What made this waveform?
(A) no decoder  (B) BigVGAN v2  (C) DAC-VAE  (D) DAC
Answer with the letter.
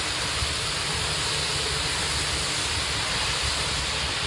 A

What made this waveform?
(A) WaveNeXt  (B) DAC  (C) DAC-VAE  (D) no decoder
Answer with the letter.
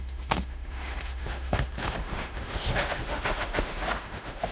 C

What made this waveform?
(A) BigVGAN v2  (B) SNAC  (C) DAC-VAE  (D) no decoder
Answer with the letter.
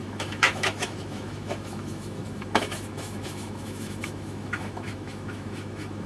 C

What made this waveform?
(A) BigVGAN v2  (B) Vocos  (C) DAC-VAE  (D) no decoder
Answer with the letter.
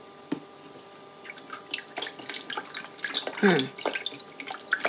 D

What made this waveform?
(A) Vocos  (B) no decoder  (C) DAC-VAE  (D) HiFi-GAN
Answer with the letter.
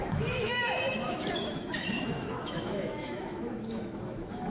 C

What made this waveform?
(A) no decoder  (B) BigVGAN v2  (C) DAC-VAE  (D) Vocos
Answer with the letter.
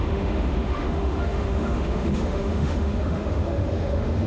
C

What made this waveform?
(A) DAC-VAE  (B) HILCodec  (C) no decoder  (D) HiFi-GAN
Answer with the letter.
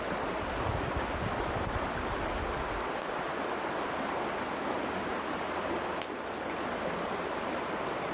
C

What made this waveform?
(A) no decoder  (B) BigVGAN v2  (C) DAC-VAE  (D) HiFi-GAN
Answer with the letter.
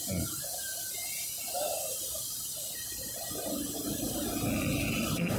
A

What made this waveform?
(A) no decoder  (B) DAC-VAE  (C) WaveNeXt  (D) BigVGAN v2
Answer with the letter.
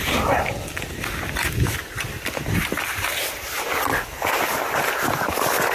A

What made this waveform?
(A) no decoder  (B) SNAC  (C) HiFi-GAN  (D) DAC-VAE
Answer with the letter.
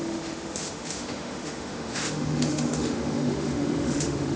D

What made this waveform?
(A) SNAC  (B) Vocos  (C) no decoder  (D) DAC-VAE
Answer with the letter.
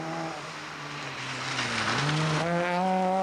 C